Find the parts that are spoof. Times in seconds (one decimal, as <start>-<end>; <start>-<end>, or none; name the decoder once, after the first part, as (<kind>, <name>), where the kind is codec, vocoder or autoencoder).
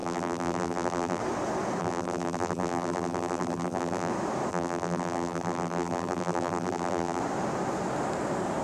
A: 0.0-1.2 (vocoder, BigVGAN v2); 1.8-4.1; 4.5-7.2